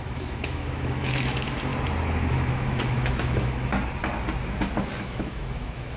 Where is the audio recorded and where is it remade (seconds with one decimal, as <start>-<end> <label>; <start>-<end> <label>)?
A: 0.0-1.7 remade; 1.7-2.3 recorded; 2.3-3.7 remade; 3.7-5.0 recorded; 5.0-6.0 remade